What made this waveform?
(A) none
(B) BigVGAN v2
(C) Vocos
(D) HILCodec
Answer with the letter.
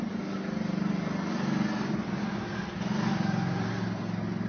A